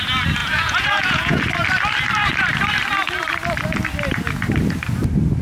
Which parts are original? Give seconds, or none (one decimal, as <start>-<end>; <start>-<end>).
0.0-0.4; 1.5-5.4